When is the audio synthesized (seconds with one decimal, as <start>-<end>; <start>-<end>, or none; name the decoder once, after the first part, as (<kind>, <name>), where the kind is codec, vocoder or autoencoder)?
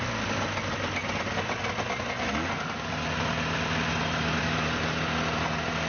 none